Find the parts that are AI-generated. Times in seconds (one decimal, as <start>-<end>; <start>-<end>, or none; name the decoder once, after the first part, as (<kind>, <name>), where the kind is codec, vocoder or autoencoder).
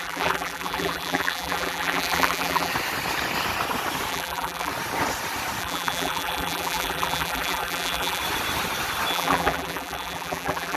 0.0-2.7 (vocoder, BigVGAN v2); 4.1-4.7; 5.6-8.2; 9.1-10.8